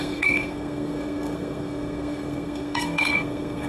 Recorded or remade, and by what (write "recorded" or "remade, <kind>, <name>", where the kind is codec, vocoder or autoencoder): remade, codec, SNAC